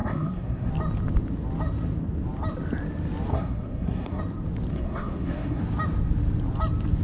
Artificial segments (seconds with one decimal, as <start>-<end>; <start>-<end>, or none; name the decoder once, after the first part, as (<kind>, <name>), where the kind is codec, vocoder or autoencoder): 0.0-0.7 (codec, SNAC); 3.3-4.2; 4.7-5.6